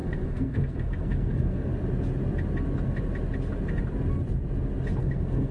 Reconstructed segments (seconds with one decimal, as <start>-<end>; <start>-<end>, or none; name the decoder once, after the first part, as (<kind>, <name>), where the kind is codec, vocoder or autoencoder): 0.0-1.7 (codec, SNAC); 5.0-5.5